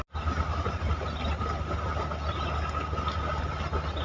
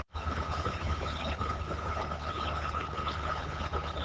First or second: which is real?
first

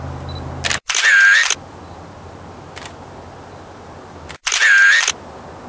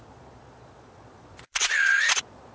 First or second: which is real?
first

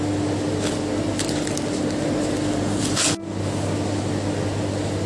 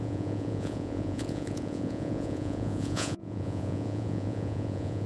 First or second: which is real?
first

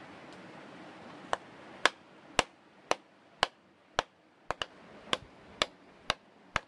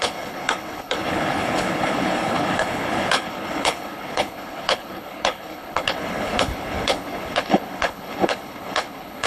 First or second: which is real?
first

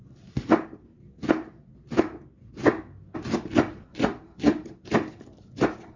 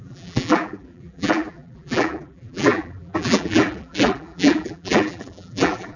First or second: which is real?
first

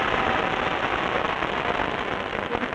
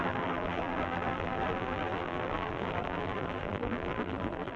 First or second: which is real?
first